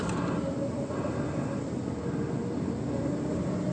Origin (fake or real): real